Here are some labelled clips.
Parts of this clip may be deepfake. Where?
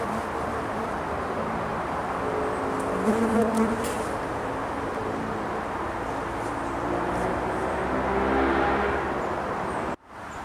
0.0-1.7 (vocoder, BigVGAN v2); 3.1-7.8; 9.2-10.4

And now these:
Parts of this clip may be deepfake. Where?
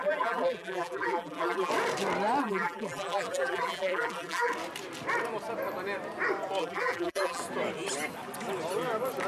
0.0-1.7 (vocoder, BigVGAN v2); 2.4-4.5; 6.6-7.4